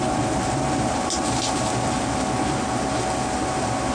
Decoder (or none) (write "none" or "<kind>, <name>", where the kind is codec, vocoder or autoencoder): none